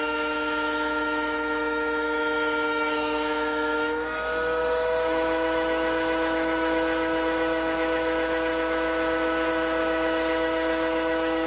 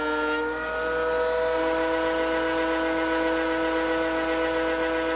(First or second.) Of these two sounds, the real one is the second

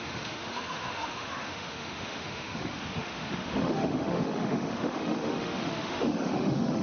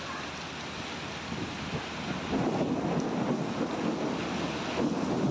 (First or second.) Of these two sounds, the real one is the second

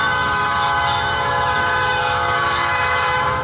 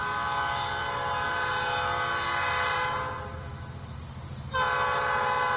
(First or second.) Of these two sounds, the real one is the second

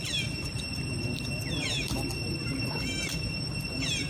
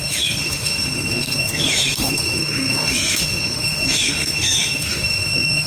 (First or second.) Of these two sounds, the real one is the first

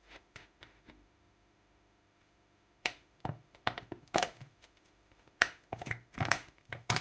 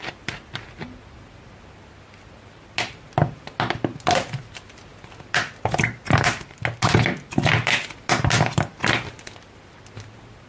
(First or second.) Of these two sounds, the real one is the second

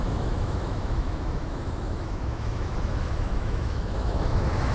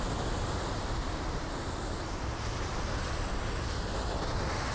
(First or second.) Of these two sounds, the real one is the second